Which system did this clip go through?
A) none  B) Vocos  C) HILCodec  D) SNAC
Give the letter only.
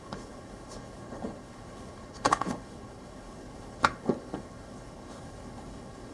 C